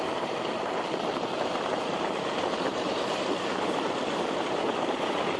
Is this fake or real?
fake